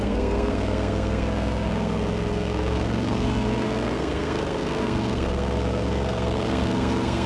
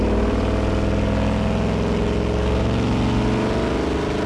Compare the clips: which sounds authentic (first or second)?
second